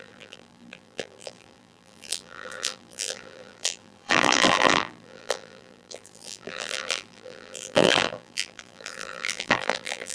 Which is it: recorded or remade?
remade